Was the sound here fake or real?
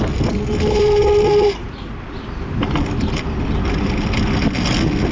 real